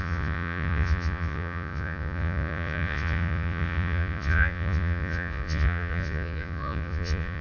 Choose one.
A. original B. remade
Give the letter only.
B